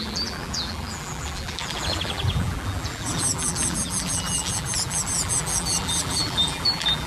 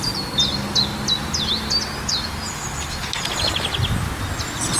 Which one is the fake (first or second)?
first